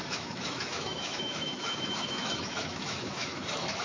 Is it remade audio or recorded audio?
remade